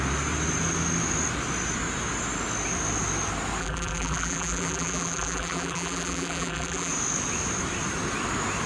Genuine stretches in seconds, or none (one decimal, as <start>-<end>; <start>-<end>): 0.0-3.6; 6.9-8.7